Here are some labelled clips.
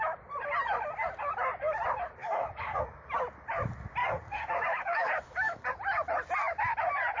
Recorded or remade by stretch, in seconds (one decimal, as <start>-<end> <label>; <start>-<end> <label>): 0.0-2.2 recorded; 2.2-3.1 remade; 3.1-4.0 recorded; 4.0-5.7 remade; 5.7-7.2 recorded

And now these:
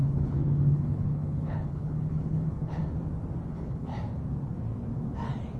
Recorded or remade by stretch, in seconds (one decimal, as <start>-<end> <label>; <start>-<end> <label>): 0.0-2.8 remade; 2.8-3.5 recorded; 3.5-3.9 remade; 3.9-5.6 recorded

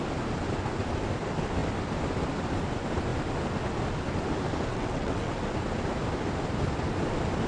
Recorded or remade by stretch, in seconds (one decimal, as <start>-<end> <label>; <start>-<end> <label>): 0.0-4.7 recorded; 4.7-5.3 remade; 5.3-7.5 recorded